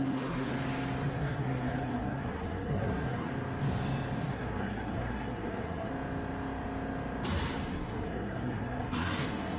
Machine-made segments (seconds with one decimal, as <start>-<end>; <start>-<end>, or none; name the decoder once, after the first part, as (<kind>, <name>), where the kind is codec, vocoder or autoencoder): 0.0-0.5 (codec, SNAC); 1.1-3.3; 4.2-5.9; 7.7-9.6